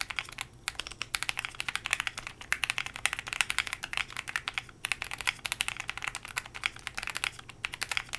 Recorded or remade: recorded